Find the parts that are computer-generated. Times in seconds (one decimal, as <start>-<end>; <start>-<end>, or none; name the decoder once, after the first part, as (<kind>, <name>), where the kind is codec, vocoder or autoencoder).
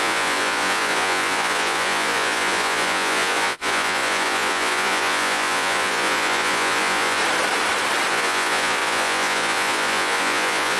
0.0-7.2 (vocoder, Vocos); 8.1-10.8